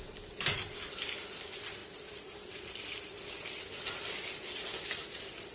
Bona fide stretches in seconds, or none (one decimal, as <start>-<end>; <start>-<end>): 0.0-5.5